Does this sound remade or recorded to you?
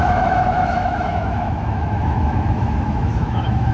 remade